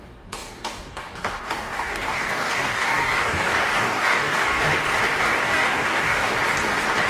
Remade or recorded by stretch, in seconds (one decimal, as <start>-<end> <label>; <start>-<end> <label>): 0.0-4.7 remade; 4.7-5.2 recorded; 5.2-6.3 remade; 6.3-7.1 recorded